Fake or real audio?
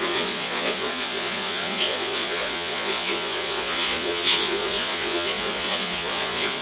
fake